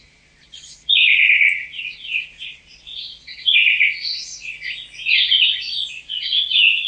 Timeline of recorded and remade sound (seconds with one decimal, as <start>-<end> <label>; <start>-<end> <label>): 0.0-4.3 remade; 4.3-5.9 recorded; 5.9-6.9 remade